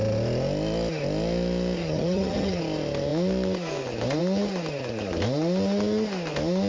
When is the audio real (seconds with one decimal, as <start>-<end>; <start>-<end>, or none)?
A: 0.0-1.8; 2.6-6.7